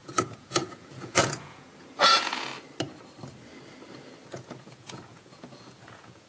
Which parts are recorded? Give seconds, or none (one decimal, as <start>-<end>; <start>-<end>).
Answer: 2.5-4.3